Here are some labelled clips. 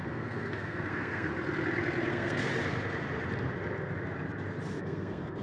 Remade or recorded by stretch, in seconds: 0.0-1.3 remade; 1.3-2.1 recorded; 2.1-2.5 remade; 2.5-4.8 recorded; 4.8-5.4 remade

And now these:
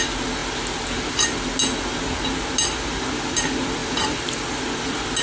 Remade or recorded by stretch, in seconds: 0.0-3.8 recorded; 3.8-4.6 remade; 4.6-5.2 recorded

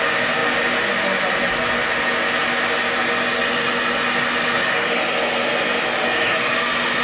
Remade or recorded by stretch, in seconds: 0.0-7.0 recorded

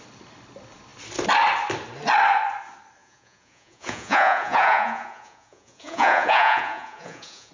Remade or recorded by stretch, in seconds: 0.0-3.0 recorded; 3.0-7.5 remade